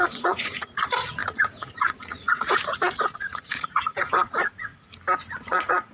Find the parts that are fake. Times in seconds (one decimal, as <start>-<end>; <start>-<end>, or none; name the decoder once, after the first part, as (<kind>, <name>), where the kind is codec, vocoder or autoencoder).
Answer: 0.0-4.7 (vocoder, Vocos); 5.4-5.9